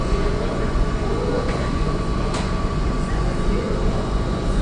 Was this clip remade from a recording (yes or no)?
yes